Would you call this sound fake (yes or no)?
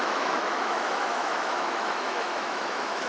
yes